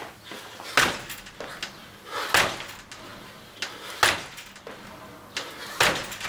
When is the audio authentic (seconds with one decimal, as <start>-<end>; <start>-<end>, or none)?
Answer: 0.0-6.3